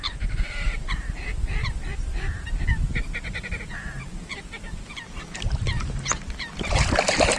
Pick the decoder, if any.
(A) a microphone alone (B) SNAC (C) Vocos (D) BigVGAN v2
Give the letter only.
A